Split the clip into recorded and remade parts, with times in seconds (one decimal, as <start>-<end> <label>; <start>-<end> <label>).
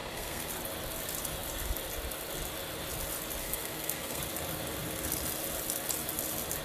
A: 0.0-0.5 remade; 0.5-3.4 recorded; 3.4-4.2 remade; 4.2-6.6 recorded